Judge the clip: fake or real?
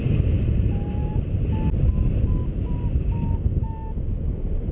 real